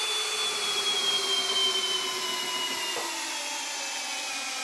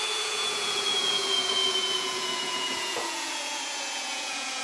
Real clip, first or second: first